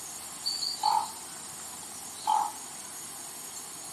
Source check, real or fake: real